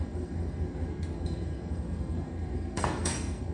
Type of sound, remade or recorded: remade